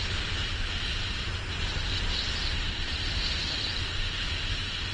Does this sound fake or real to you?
real